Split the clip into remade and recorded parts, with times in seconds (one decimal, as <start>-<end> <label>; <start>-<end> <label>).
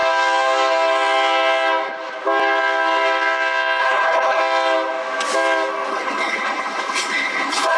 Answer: 0.0-3.8 recorded; 3.8-4.4 remade; 4.4-5.9 recorded; 5.9-7.8 remade